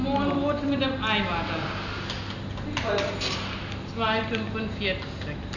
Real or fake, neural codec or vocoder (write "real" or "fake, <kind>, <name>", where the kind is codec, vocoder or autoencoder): real